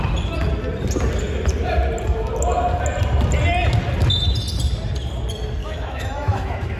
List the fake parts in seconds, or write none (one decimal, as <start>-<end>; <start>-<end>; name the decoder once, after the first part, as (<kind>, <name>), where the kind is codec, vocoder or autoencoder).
5.6-6.8 (autoencoder, DAC-VAE)